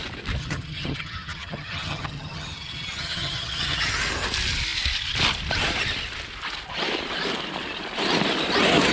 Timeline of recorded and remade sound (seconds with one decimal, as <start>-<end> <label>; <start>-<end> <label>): 0.0-0.4 recorded; 0.4-3.9 remade; 3.9-8.9 recorded